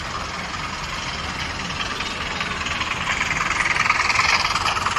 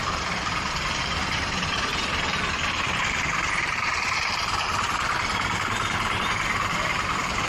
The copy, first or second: second